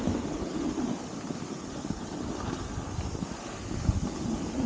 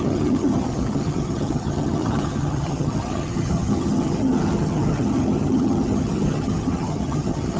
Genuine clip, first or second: first